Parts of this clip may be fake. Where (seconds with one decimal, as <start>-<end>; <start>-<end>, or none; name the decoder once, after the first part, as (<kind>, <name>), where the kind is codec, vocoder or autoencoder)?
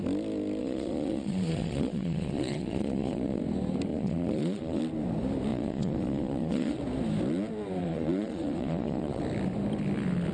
0.6-3.4 (vocoder, Vocos); 3.9-4.8; 5.5-6.8; 7.8-9.2